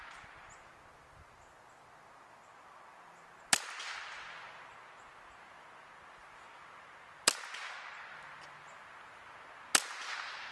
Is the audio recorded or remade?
recorded